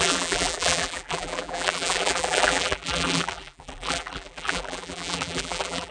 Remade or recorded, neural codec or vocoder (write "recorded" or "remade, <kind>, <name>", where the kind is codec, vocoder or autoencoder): remade, vocoder, BigVGAN v2